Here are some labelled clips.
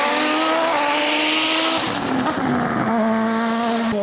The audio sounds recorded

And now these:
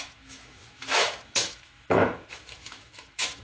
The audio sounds remade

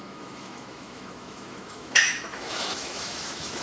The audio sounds remade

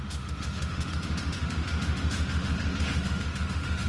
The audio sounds remade